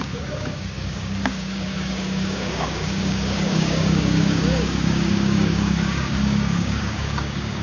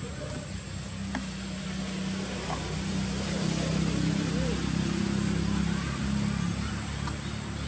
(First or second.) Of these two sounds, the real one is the second